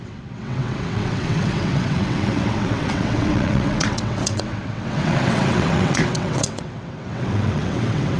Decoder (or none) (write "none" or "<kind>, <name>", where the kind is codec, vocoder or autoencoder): vocoder, WaveNeXt